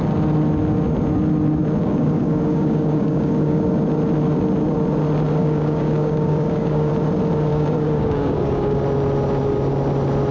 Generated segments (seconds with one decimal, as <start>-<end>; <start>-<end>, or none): 1.8-3.6; 5.4-6.9; 7.5-8.8